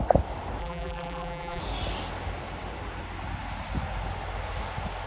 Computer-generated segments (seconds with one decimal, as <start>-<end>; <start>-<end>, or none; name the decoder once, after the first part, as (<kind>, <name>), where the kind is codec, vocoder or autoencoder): 0.6-1.6 (vocoder, BigVGAN v2)